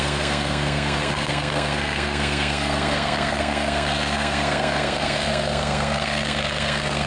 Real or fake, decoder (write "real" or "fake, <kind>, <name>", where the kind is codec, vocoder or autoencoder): fake, codec, SNAC